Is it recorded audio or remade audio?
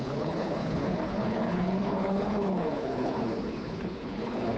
remade